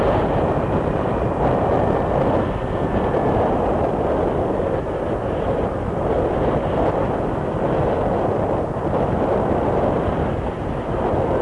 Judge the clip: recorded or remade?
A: recorded